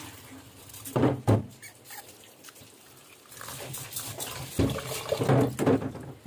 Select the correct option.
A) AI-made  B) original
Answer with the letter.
B